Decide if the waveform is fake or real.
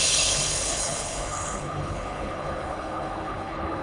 fake